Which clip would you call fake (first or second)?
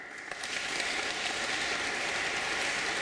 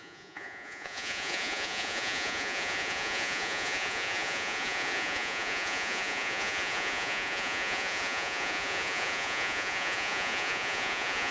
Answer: second